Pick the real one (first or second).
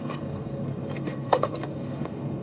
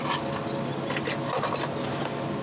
second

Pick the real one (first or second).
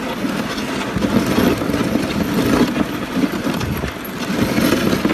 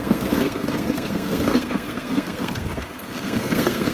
first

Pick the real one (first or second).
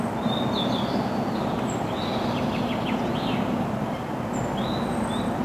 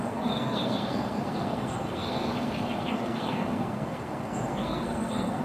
first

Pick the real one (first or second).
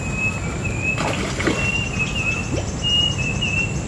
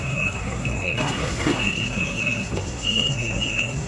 first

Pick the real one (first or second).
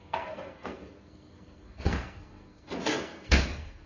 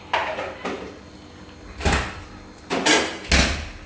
second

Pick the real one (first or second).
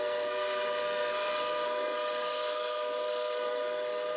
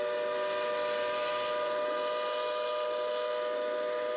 second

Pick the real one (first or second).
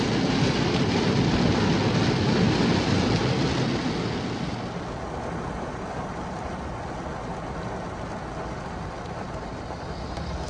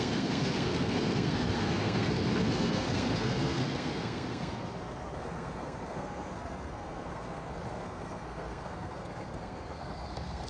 first